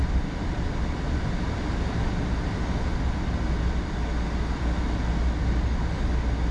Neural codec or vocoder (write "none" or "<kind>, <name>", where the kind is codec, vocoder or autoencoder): none